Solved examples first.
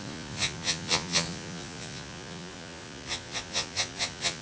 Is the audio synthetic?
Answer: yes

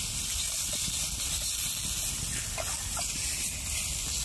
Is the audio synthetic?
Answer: no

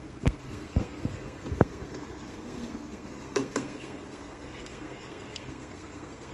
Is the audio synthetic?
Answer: yes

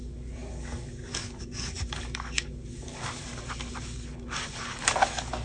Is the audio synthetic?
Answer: yes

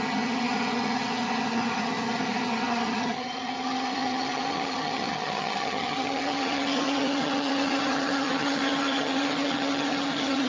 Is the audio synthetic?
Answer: yes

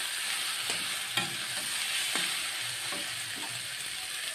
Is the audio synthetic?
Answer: no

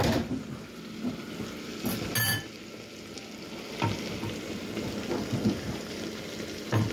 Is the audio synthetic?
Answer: no